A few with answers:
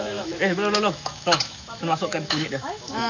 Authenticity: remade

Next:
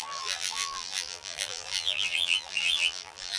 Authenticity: remade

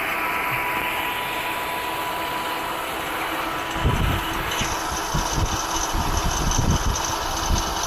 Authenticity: recorded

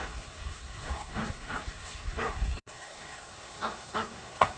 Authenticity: remade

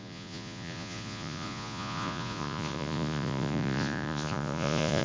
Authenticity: remade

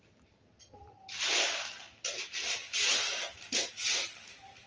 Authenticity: recorded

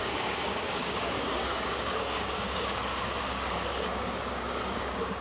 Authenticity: remade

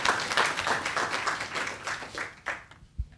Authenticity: recorded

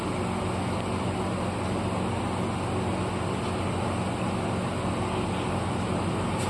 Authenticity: recorded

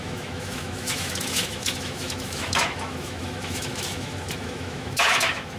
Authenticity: remade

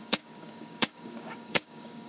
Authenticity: remade